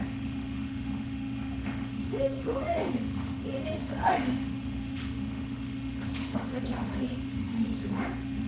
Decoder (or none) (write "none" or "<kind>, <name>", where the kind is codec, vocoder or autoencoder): autoencoder, DAC-VAE